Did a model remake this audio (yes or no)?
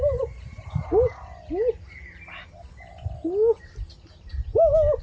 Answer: no